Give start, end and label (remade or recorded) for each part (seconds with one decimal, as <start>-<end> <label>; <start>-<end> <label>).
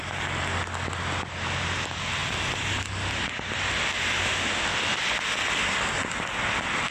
0.0-6.9 recorded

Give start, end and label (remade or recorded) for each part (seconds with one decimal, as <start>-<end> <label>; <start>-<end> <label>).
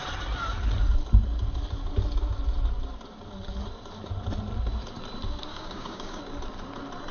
0.0-5.5 recorded; 5.5-6.2 remade; 6.2-7.1 recorded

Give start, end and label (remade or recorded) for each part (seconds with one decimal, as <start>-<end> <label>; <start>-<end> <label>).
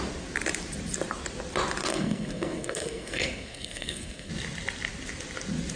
0.0-1.9 recorded; 1.9-4.3 remade; 4.3-5.8 recorded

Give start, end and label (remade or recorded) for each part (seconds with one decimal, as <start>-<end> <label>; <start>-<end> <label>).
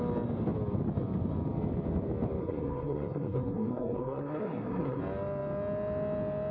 0.0-2.4 recorded; 2.4-5.0 remade; 5.0-6.5 recorded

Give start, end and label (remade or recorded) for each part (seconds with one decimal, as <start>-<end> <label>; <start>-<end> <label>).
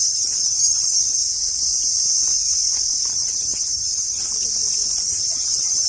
0.0-1.2 remade; 1.2-3.1 recorded; 3.1-4.3 remade; 4.3-5.0 recorded; 5.0-5.9 remade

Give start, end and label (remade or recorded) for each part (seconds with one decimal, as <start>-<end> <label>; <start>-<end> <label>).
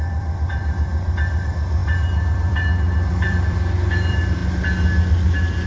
0.0-4.4 remade; 4.4-5.7 recorded